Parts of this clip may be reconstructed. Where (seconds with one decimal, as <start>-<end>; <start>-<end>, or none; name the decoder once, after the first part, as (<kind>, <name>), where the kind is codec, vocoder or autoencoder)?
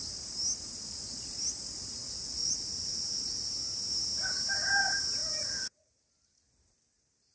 2.4-3.5 (vocoder, Vocos); 5.2-5.9